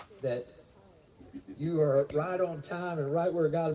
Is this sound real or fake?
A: real